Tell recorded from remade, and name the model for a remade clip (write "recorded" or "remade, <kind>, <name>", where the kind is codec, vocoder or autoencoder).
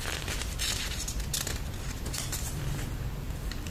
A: remade, vocoder, BigVGAN v2